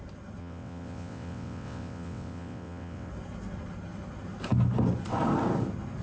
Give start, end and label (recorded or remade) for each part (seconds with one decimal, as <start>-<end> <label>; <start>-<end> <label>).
0.0-0.4 recorded; 0.4-3.1 remade; 3.1-6.0 recorded